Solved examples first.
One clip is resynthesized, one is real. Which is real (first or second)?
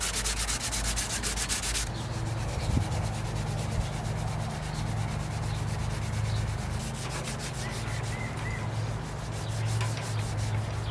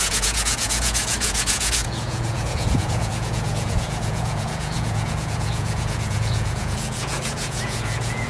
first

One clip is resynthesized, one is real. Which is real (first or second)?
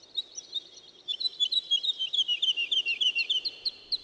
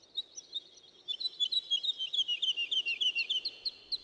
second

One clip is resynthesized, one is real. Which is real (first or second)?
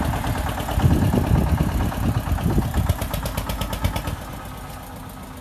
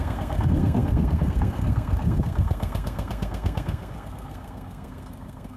first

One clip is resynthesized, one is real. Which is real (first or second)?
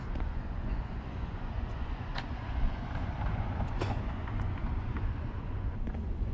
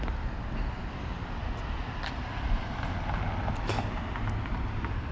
second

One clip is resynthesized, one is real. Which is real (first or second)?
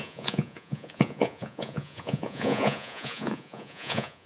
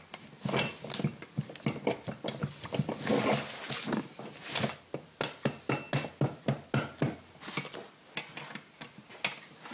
second